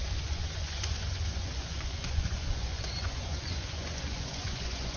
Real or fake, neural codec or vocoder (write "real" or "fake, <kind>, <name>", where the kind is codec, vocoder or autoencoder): fake, vocoder, Vocos